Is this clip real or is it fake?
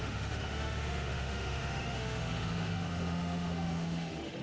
fake